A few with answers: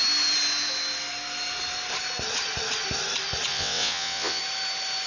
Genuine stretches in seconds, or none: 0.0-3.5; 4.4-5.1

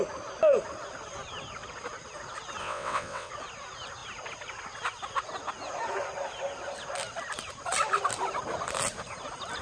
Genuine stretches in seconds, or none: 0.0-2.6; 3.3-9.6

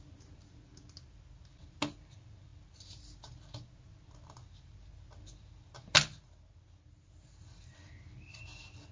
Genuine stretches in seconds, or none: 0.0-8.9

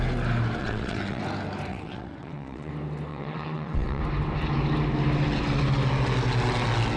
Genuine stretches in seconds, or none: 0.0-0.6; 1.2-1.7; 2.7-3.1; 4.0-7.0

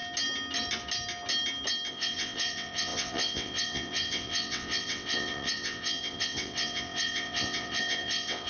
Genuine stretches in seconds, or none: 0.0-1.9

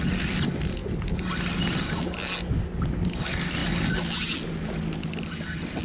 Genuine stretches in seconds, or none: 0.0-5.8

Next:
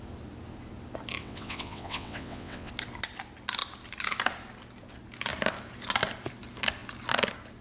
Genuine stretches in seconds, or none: 0.0-1.2; 2.7-7.6

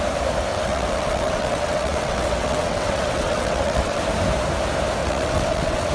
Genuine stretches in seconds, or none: 0.0-0.5; 4.0-5.0